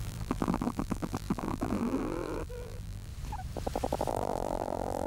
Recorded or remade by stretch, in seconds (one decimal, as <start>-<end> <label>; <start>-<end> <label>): 0.0-3.1 remade; 3.1-4.1 recorded; 4.1-5.1 remade